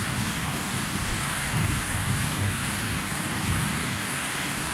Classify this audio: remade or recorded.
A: remade